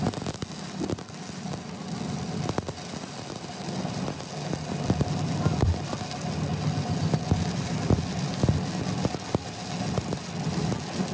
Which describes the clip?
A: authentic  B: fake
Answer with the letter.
A